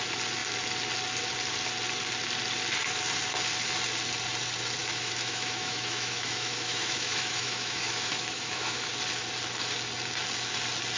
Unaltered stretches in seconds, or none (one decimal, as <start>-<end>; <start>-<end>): 0.0-4.8; 8.9-11.0